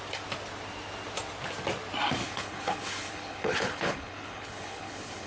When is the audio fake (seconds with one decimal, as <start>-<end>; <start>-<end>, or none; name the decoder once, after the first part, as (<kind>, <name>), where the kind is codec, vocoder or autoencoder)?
2.2-5.3 (codec, HILCodec)

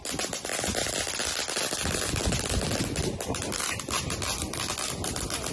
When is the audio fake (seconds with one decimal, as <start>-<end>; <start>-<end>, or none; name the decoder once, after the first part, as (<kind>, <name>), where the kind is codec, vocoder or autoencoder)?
none

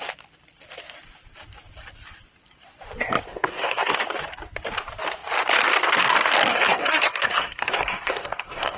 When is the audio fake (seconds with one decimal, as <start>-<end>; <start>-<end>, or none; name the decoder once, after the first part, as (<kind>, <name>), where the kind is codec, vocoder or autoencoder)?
3.3-3.9 (codec, SNAC); 6.5-8.8

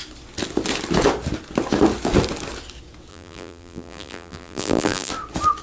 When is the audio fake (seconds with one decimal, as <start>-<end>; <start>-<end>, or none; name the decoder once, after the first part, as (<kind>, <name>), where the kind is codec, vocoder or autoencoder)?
3.1-5.1 (vocoder, BigVGAN v2)

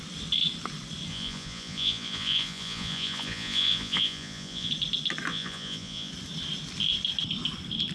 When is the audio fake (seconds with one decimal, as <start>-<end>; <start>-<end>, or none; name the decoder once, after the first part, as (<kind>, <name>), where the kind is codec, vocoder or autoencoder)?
1.1-4.7 (vocoder, Vocos); 5.3-6.1